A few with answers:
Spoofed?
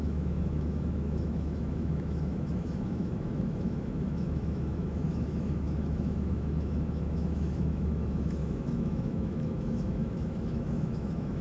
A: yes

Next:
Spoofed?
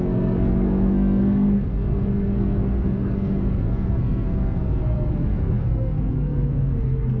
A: yes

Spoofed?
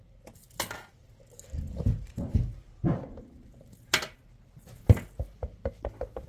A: no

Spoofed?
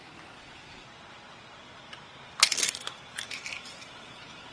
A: no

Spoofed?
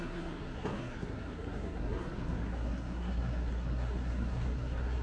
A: yes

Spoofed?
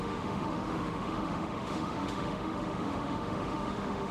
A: yes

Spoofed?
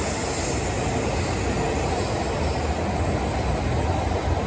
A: no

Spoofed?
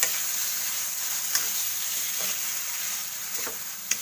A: yes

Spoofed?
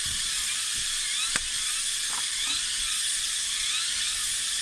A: no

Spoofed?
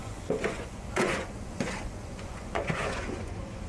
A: yes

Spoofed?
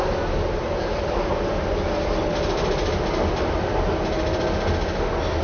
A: no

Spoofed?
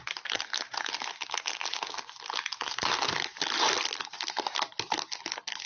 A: no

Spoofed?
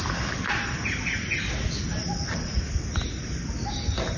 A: no